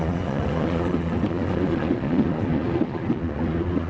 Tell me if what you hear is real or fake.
fake